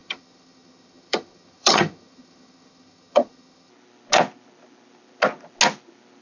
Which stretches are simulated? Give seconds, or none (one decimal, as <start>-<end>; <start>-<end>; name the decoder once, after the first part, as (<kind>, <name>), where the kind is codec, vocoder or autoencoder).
0.0-3.7 (vocoder, HiFi-GAN)